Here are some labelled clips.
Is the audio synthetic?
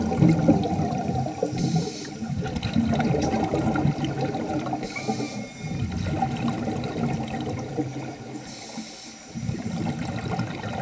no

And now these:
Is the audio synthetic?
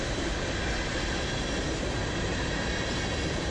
no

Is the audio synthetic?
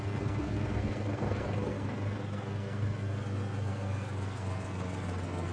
yes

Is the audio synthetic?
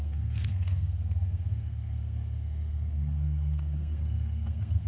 yes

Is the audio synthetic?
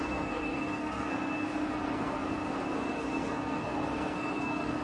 yes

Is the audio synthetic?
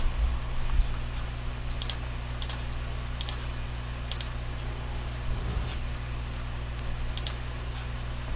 no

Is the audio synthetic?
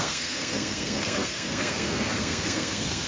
yes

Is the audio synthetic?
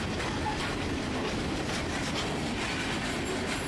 no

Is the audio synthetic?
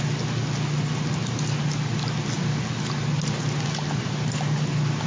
no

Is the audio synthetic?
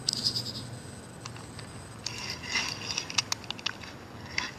no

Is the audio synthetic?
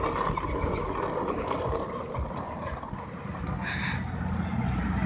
no